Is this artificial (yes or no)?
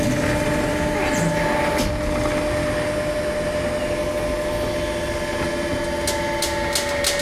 no